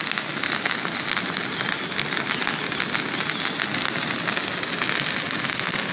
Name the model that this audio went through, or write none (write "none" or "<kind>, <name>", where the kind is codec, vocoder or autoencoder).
none